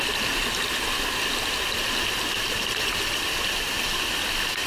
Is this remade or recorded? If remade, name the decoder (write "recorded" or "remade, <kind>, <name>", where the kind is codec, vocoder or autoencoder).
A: recorded